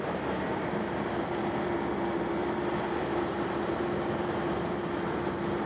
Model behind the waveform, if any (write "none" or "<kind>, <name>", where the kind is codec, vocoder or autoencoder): vocoder, BigVGAN v2